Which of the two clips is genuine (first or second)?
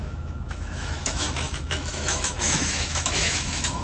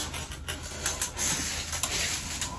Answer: second